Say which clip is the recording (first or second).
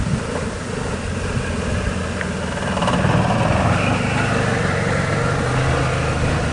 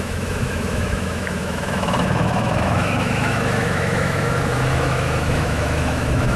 first